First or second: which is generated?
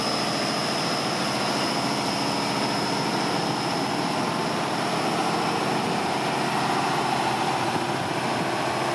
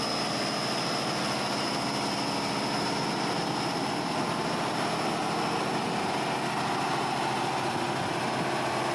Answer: first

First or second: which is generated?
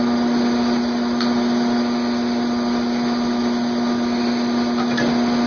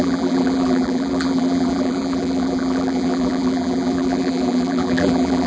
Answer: second